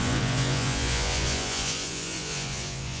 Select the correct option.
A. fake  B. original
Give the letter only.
A